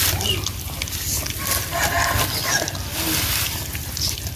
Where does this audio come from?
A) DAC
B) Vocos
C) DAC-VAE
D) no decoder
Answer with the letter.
D